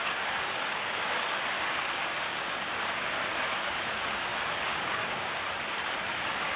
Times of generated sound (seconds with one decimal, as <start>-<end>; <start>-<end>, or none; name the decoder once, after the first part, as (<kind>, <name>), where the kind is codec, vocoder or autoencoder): 0.0-5.4 (codec, DAC); 6.1-6.6